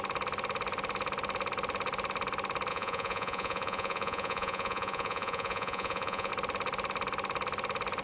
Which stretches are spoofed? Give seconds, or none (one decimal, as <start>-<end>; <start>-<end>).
2.7-6.3